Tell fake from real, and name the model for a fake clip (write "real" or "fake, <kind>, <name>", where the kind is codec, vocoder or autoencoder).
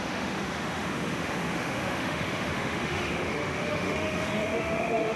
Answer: fake, autoencoder, DAC-VAE